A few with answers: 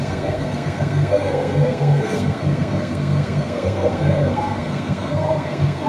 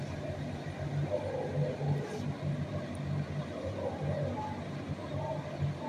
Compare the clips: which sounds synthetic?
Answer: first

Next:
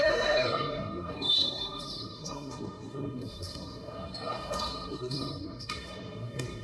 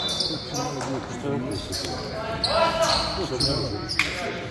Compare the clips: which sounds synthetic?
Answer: first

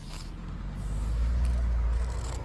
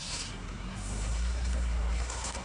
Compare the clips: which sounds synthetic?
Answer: second